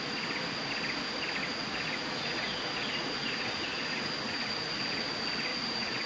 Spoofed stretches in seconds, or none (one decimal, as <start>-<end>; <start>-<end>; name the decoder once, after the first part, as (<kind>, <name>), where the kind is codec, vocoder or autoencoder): 1.4-5.1 (vocoder, Vocos); 5.5-6.1